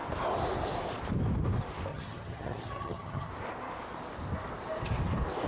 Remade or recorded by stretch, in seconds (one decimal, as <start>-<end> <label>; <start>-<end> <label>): 0.0-1.9 recorded; 1.9-3.3 remade; 3.3-5.5 recorded

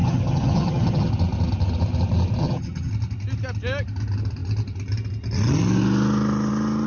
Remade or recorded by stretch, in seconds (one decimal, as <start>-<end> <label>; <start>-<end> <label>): 0.0-1.1 remade; 1.1-2.4 recorded; 2.4-2.9 remade; 2.9-6.9 recorded

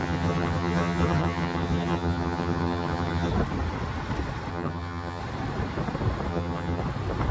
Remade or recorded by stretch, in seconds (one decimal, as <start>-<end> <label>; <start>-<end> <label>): 0.0-3.3 remade; 3.3-4.5 recorded; 4.5-5.2 remade; 5.2-6.3 recorded; 6.3-6.8 remade; 6.8-7.3 recorded

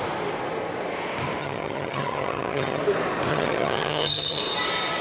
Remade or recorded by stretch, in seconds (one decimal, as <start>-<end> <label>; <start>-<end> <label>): 0.0-1.4 recorded; 1.4-2.8 remade; 2.8-3.3 recorded; 3.3-4.4 remade; 4.4-5.0 recorded